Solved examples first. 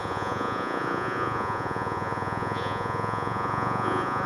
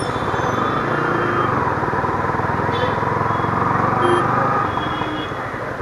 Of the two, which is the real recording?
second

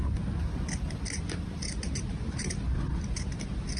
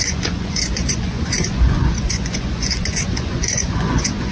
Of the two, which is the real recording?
first